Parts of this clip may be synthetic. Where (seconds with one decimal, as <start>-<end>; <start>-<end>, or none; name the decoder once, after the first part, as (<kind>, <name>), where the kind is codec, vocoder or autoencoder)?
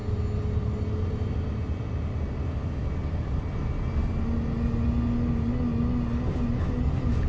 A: none